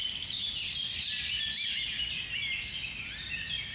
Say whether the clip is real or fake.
real